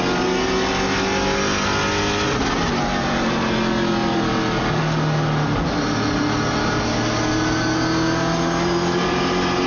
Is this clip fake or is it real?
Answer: real